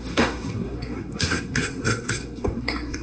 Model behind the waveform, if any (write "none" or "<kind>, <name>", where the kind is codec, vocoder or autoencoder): codec, SNAC